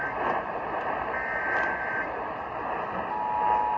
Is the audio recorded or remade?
recorded